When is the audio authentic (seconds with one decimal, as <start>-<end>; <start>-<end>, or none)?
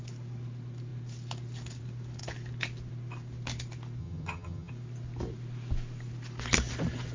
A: 0.0-4.0; 4.7-7.1